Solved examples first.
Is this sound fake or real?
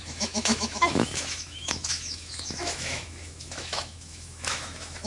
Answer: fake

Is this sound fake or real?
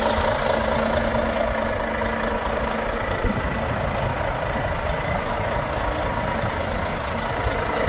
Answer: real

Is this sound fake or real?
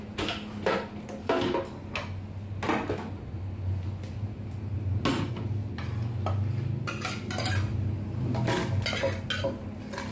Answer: real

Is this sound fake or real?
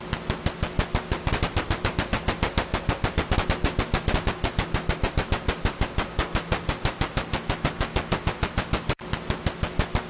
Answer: real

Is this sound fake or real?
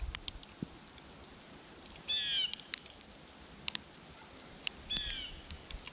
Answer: real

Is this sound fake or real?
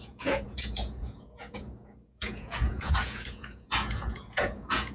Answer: fake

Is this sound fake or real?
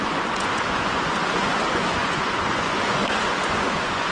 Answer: fake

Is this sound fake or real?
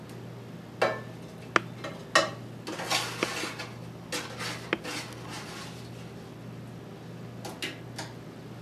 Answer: real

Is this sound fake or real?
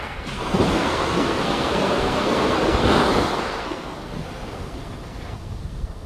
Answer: fake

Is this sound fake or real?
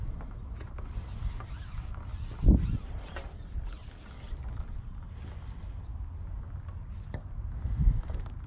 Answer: real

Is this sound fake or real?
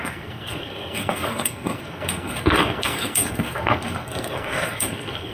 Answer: fake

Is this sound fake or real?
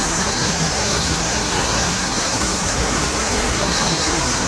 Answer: fake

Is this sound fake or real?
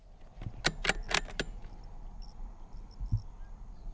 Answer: real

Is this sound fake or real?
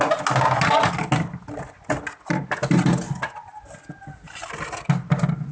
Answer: real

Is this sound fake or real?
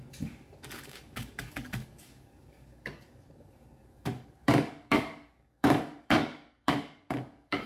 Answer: fake